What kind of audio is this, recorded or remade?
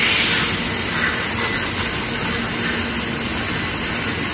recorded